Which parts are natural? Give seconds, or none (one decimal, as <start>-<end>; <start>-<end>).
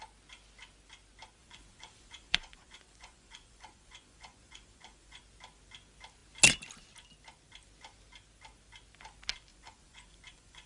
0.0-1.4; 5.2-9.5